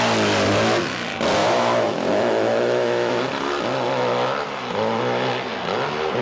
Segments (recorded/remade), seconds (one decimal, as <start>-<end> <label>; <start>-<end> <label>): 0.0-1.4 recorded; 1.4-3.1 remade; 3.1-6.2 recorded